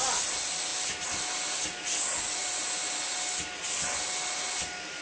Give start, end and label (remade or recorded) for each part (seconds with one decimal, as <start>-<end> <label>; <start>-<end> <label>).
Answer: 0.0-5.0 recorded